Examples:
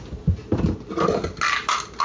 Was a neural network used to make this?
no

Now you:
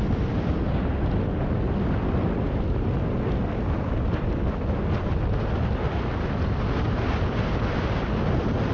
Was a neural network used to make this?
no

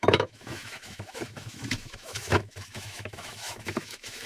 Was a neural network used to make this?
yes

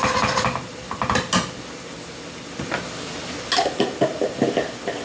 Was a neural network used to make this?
no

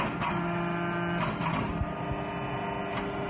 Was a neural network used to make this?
no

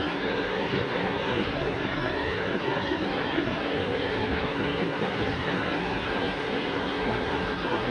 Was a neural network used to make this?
yes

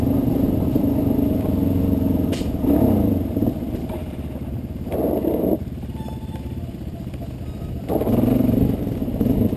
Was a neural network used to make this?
no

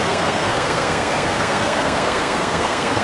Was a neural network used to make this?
yes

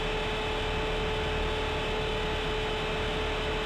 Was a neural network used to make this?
no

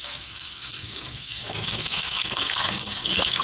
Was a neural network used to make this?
yes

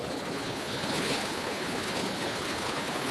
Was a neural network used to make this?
yes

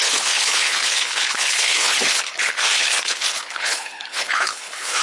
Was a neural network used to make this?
yes